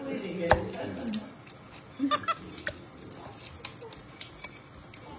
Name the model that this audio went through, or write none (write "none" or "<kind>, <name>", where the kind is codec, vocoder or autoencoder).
none